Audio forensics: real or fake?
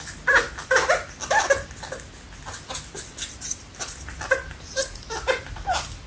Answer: real